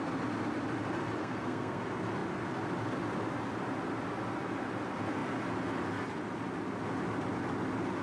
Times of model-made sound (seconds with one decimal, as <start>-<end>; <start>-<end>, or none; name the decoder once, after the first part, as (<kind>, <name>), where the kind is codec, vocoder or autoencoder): 1.2-1.8 (codec, SNAC)

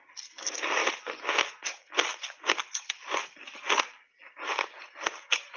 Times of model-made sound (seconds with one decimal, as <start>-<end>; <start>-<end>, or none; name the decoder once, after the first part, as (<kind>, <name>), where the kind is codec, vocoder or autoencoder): none